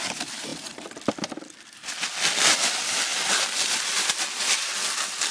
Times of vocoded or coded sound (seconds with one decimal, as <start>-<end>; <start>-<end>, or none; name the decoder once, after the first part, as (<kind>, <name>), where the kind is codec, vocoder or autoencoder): none